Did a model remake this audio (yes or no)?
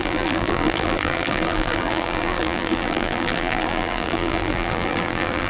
yes